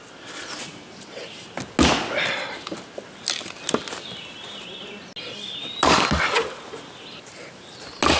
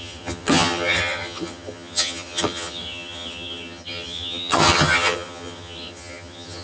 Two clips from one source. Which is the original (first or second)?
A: first